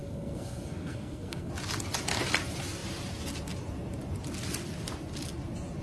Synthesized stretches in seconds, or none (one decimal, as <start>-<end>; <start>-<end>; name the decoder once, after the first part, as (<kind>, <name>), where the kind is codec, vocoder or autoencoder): 0.0-1.5 (codec, SNAC)